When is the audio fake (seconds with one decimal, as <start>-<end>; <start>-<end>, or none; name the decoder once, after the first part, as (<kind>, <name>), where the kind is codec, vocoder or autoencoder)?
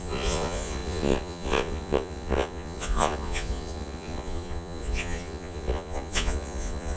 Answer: 0.0-7.0 (vocoder, Vocos)